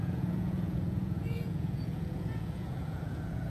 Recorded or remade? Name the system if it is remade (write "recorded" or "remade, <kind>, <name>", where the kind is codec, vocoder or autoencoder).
remade, vocoder, Vocos